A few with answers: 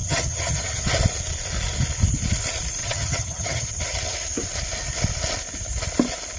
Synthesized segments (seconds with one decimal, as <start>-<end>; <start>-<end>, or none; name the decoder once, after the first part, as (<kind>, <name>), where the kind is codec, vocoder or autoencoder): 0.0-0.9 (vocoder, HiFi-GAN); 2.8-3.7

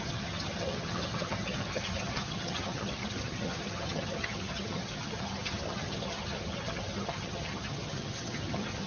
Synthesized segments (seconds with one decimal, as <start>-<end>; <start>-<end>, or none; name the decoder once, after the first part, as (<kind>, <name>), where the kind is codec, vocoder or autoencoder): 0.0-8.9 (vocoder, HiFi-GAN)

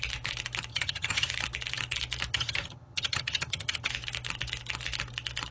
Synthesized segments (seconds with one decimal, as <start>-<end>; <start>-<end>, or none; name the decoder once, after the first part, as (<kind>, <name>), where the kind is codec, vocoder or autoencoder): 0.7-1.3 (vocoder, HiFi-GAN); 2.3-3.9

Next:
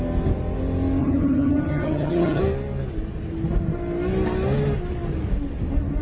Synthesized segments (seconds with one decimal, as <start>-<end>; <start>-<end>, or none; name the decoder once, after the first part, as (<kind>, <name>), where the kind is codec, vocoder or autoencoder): 1.0-2.4 (vocoder, HiFi-GAN)

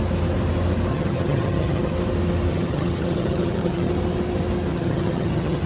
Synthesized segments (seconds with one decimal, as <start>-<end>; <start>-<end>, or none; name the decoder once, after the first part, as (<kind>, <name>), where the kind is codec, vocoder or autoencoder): 0.9-1.9 (vocoder, HiFi-GAN); 2.5-3.9; 4.7-5.7

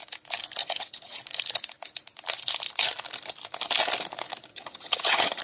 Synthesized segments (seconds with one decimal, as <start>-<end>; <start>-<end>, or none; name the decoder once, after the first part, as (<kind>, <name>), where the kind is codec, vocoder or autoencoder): 0.6-1.2 (vocoder, HiFi-GAN); 4.5-5.4